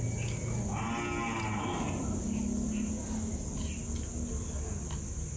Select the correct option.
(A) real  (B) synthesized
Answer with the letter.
A